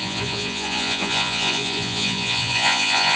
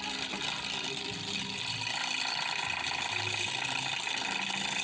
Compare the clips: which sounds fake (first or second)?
first